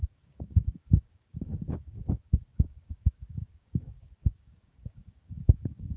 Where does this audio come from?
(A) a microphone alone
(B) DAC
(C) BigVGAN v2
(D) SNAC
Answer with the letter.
B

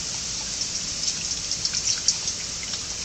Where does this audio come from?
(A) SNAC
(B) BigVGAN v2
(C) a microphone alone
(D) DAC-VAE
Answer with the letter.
C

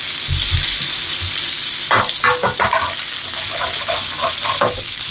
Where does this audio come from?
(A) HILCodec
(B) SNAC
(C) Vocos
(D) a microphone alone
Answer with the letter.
D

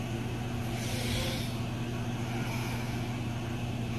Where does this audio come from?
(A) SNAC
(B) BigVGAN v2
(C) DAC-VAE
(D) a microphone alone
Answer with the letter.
D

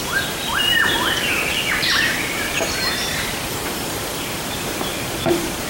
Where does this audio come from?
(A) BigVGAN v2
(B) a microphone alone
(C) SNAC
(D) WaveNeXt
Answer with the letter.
A